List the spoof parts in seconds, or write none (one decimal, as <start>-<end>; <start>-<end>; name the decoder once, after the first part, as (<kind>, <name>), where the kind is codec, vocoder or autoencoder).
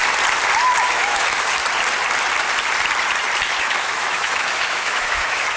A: 0.9-1.6 (autoencoder, DAC-VAE); 3.6-5.6